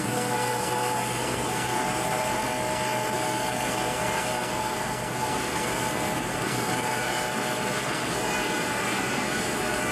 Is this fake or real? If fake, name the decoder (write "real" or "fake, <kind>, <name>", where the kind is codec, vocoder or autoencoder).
fake, codec, SNAC